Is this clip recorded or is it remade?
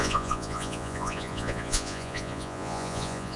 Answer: remade